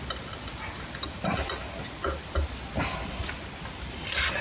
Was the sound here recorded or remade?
recorded